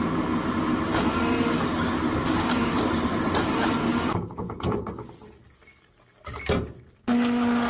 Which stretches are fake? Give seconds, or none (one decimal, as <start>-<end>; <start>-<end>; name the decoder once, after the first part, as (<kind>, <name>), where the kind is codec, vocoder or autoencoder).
2.2-2.9 (codec, DAC); 3.8-5.1